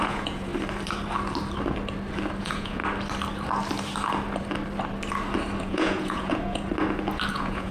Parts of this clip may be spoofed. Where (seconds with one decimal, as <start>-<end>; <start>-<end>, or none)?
0.0-0.5; 2.4-2.8; 5.6-6.7; 7.3-7.7